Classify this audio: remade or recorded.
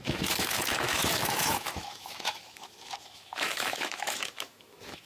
remade